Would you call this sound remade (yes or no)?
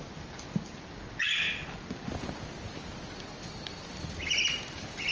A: no